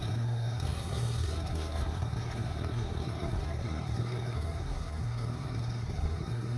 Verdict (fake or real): fake